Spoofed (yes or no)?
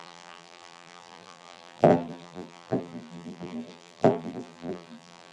yes